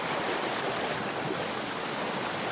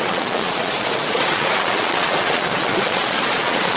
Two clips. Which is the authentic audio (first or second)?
first